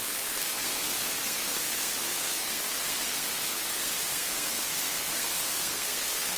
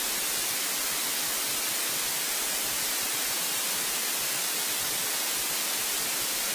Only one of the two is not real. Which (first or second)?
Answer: first